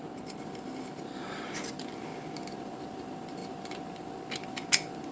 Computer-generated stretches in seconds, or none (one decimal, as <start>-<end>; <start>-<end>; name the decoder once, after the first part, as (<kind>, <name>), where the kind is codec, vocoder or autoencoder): none